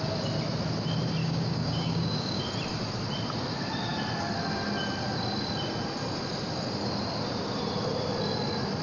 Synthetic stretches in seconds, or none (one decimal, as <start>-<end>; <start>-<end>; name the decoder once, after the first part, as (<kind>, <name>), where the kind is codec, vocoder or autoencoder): 1.2-2.4 (codec, DAC)